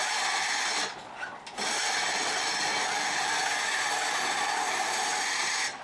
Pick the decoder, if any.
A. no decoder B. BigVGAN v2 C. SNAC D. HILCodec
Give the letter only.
A